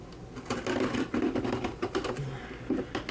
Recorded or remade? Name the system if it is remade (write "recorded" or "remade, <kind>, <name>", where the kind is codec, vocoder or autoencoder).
recorded